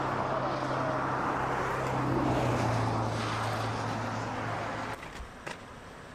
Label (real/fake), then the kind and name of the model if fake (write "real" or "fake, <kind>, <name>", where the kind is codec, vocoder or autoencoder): real